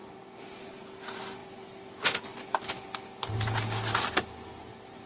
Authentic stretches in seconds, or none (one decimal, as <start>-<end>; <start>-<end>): 0.0-5.1